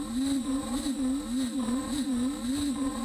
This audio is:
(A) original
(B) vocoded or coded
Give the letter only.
A